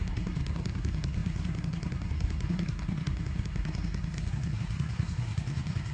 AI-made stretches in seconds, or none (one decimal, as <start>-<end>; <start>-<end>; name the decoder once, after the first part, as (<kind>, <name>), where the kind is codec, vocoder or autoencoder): 0.0-5.9 (codec, SNAC)